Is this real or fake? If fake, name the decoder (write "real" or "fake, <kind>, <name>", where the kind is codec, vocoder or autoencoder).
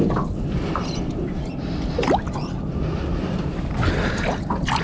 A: real